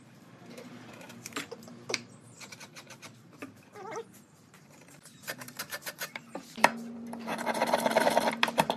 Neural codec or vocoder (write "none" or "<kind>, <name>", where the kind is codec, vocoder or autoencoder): vocoder, BigVGAN v2